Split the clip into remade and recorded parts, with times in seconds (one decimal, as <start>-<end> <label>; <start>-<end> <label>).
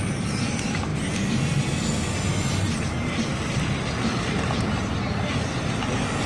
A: 0.0-0.9 recorded; 0.9-4.7 remade; 4.7-6.3 recorded